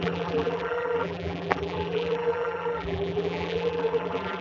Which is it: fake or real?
fake